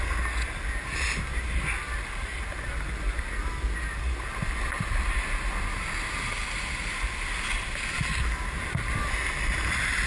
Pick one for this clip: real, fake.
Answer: real